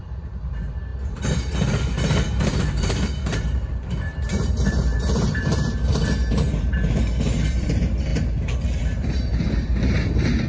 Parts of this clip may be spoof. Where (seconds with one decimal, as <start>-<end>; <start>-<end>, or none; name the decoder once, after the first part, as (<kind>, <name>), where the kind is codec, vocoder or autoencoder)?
0.0-10.5 (vocoder, BigVGAN v2)